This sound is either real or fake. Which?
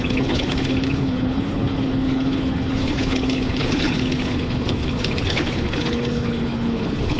fake